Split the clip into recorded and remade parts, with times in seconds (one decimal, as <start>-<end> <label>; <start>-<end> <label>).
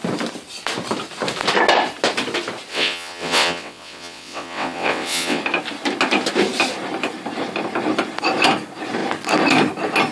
0.0-2.7 recorded; 2.7-5.4 remade; 5.4-10.1 recorded